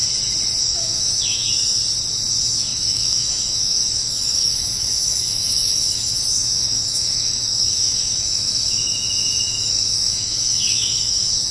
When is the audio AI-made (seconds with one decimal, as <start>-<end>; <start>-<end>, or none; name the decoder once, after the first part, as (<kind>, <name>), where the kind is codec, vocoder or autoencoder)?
0.6-1.8 (autoencoder, DAC-VAE); 2.3-11.5